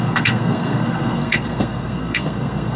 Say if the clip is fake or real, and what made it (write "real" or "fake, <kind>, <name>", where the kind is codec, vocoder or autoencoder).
fake, codec, SNAC